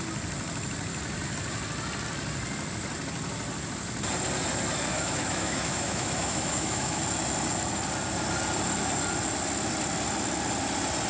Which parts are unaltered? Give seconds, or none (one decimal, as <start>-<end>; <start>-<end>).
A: 0.0-4.9; 7.0-11.1